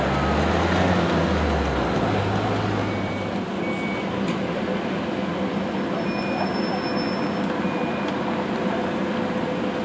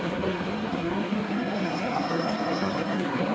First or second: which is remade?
second